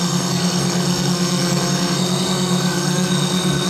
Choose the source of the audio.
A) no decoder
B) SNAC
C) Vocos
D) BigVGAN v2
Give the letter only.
B